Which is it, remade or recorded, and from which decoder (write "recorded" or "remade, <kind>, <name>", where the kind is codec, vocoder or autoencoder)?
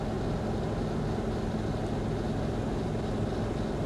recorded